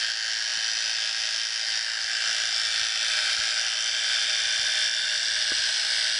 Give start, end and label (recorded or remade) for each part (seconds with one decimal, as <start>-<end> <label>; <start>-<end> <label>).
0.0-6.2 recorded